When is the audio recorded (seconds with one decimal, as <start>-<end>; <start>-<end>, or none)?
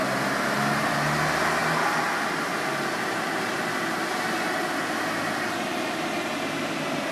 0.0-7.1